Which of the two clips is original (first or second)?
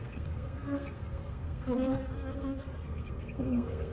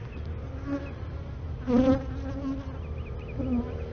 second